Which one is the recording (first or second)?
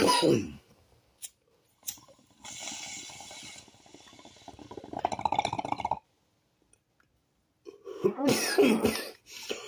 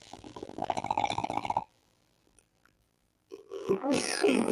first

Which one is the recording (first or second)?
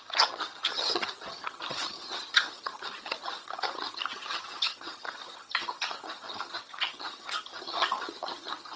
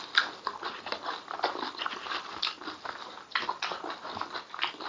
second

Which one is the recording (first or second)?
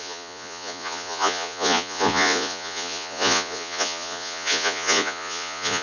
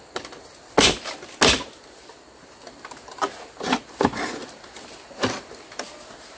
second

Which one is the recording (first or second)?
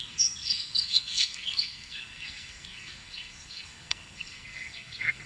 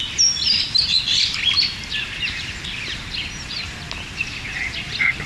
second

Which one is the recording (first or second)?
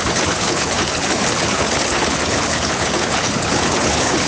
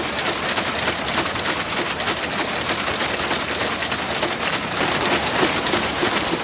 second